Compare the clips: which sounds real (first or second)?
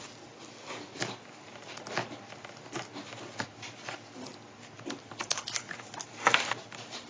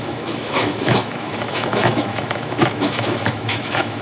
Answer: first